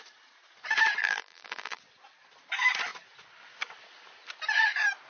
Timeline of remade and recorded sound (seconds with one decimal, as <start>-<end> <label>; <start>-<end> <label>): 0.0-1.0 recorded; 1.0-1.8 remade; 1.8-5.1 recorded